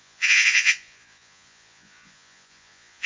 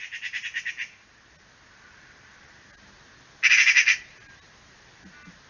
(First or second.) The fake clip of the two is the first